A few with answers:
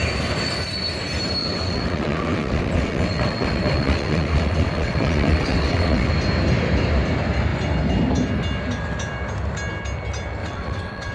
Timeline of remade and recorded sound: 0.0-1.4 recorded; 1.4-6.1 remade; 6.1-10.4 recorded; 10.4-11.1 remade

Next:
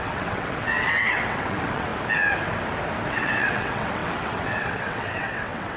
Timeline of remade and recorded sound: 0.0-1.9 remade; 1.9-3.1 recorded; 3.1-5.8 remade

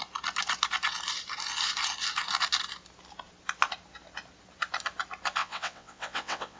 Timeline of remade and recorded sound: 0.0-5.4 recorded; 5.4-6.6 remade

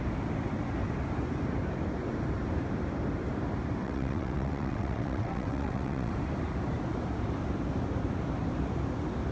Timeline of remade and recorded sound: 0.0-3.8 recorded; 3.8-6.1 remade; 6.1-9.3 recorded

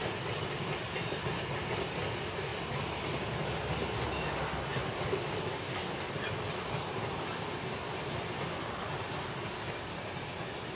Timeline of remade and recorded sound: 0.0-10.8 recorded

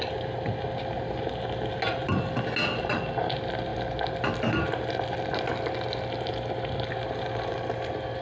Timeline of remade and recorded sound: 0.0-8.2 recorded